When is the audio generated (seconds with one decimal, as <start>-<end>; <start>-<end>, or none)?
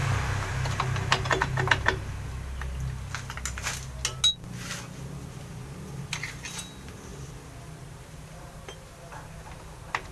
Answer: none